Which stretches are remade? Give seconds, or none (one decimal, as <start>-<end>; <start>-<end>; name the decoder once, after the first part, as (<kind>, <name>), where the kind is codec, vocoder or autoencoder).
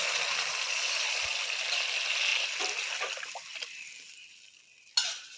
none